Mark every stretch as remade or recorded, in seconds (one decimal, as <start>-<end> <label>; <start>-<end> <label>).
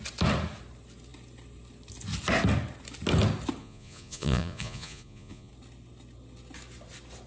0.0-3.6 recorded; 3.6-5.5 remade; 5.5-7.3 recorded